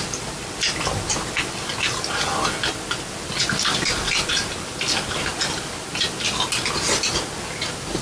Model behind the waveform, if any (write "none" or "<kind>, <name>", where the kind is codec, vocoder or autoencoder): none